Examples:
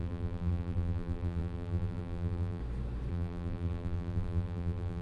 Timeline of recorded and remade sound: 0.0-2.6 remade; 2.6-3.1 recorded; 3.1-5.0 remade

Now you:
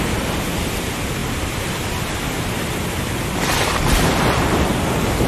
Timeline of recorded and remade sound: 0.0-3.7 recorded; 3.7-4.7 remade; 4.7-5.3 recorded

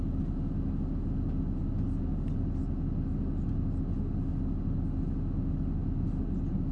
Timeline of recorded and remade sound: 0.0-6.7 recorded